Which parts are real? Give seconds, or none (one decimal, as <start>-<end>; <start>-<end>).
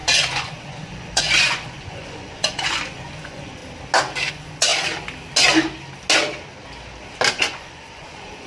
3.6-4.3; 4.7-7.3